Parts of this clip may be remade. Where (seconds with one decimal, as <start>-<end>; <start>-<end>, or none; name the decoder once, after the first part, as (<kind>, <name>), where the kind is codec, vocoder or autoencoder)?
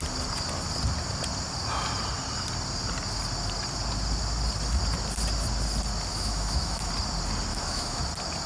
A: 6.1-6.9 (autoencoder, DAC-VAE); 7.5-8.0